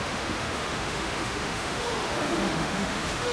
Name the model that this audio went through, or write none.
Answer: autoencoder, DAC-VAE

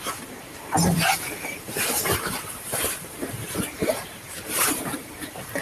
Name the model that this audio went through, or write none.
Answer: vocoder, BigVGAN v2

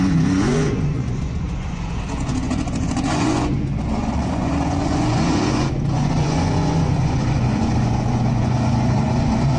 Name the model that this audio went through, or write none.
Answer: vocoder, Vocos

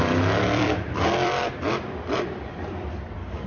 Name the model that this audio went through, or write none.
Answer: vocoder, BigVGAN v2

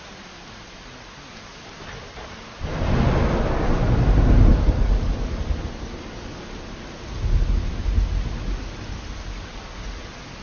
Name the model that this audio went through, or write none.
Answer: none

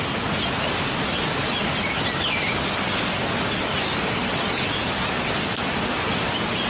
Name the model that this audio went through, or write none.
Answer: none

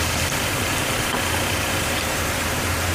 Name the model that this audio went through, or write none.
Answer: vocoder, BigVGAN v2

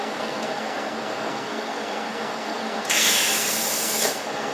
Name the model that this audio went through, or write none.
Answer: codec, SNAC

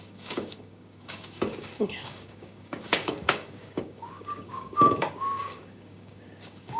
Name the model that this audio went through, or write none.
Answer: codec, DAC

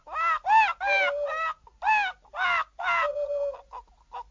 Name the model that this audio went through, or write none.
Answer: none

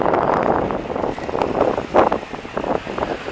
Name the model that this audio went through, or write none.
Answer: none